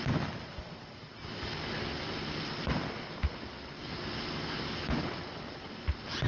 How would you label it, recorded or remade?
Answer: recorded